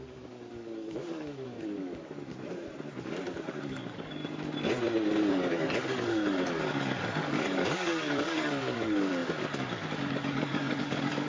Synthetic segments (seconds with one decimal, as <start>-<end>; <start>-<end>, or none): 0.0-2.3; 3.0-4.2; 5.3-11.3